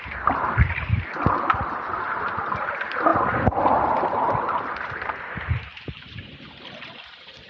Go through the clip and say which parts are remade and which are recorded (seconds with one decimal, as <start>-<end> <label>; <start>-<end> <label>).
0.0-3.1 recorded; 3.1-6.5 remade; 6.5-7.5 recorded